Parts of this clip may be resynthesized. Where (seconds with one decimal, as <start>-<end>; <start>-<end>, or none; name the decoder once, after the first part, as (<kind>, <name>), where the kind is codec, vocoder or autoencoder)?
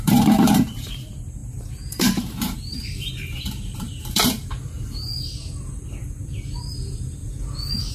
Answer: 0.0-5.1 (vocoder, BigVGAN v2); 6.6-7.2